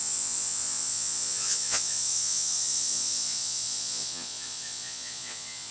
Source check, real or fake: fake